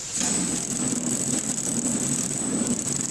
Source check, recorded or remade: recorded